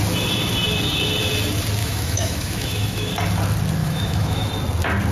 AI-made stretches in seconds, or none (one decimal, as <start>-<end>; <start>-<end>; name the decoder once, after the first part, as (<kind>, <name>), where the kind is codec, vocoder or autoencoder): 1.8-3.1 (autoencoder, DAC-VAE); 3.8-4.5